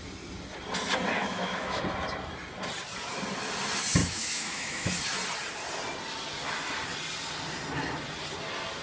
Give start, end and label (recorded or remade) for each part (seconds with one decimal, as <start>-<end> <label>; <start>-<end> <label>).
0.0-1.2 recorded; 1.2-1.8 remade; 1.8-4.0 recorded; 4.0-4.9 remade; 4.9-8.8 recorded